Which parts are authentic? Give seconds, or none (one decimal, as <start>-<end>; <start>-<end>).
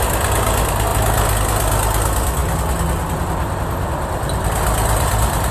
0.0-2.4